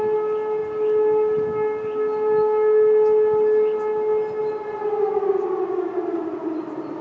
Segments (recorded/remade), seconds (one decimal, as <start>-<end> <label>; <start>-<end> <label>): 0.0-7.0 recorded